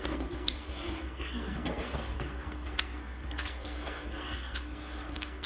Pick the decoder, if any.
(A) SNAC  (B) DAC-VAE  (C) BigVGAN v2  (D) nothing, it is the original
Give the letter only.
A